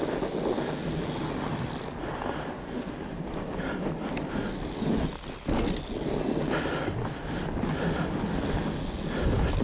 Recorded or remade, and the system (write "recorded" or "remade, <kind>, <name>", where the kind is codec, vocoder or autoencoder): recorded